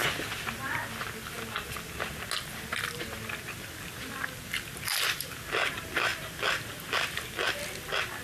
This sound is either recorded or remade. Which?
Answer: recorded